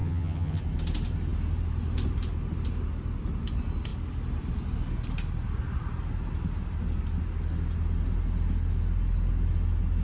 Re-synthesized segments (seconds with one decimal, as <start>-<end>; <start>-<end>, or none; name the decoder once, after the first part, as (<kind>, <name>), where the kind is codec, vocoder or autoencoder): 0.0-0.6 (vocoder, HiFi-GAN)